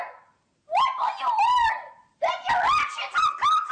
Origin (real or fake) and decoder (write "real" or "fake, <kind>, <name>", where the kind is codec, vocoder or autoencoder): real